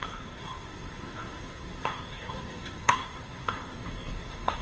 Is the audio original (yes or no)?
no